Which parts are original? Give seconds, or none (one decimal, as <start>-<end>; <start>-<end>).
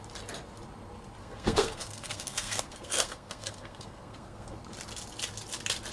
0.0-1.2; 4.6-5.9